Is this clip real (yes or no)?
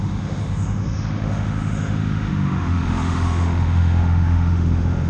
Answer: no